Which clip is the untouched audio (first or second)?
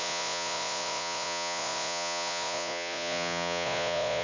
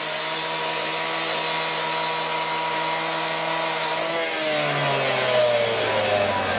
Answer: second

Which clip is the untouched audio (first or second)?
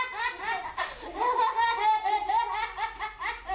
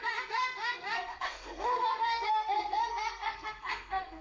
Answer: first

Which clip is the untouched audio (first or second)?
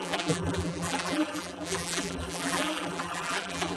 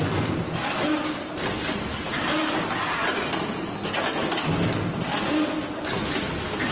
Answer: second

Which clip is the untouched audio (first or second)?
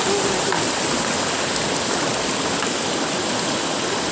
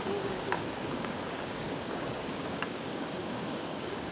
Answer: first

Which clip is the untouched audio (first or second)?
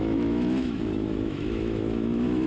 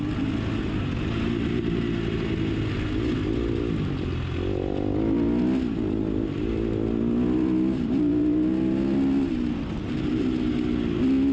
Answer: second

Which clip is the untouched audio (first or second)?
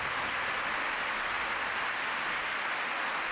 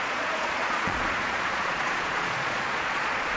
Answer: first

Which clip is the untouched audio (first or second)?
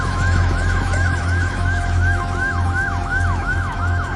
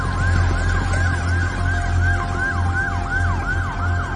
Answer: second